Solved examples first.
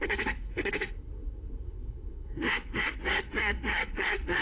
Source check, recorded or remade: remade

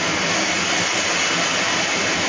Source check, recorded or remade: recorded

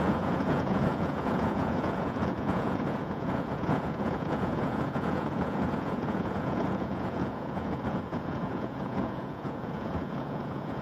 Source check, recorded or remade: remade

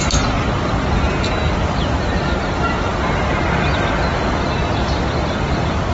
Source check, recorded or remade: recorded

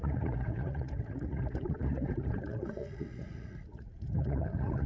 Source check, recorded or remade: remade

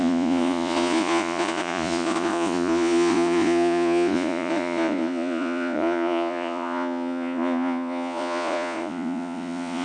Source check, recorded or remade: remade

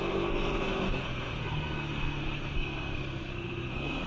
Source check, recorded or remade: remade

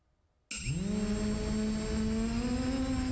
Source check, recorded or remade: recorded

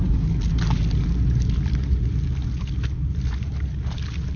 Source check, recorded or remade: recorded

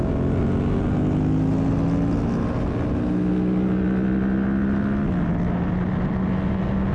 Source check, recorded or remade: recorded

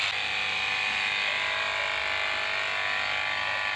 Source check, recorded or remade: recorded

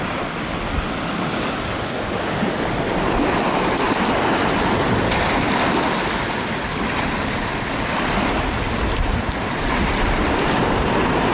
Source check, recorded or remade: recorded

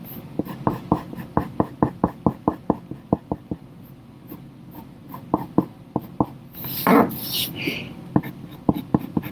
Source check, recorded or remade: recorded